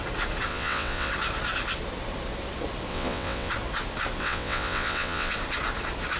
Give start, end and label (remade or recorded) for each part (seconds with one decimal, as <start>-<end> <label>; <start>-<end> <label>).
0.0-0.5 recorded; 0.5-1.1 remade; 1.1-2.9 recorded; 2.9-3.5 remade; 3.5-4.2 recorded; 4.2-5.3 remade; 5.3-6.2 recorded